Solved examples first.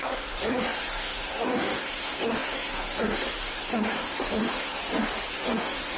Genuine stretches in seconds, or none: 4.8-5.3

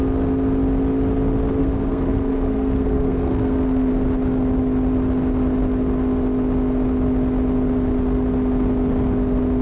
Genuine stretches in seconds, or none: 0.0-1.6; 3.9-9.6

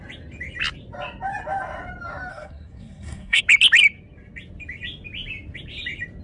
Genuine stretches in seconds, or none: 0.0-2.3; 3.4-6.2

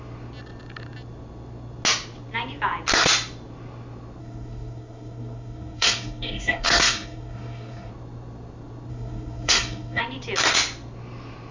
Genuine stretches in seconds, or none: 0.0-4.2; 7.9-8.9; 10.0-11.5

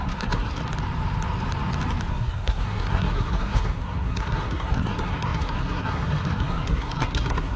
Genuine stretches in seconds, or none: 0.6-2.1